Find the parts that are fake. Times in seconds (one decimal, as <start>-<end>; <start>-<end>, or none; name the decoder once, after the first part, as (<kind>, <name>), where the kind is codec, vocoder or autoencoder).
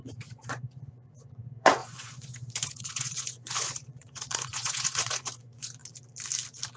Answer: 0.0-5.8 (vocoder, Vocos)